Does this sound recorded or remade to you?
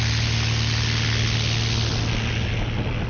recorded